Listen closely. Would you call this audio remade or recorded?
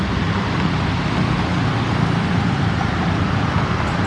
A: recorded